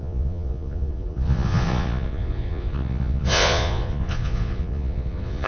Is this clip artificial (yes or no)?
yes